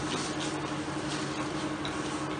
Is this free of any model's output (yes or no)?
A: yes